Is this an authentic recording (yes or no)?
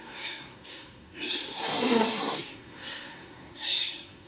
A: no